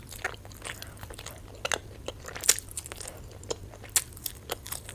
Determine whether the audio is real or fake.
real